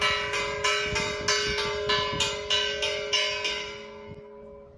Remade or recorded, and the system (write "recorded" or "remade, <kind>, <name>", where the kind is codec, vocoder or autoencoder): recorded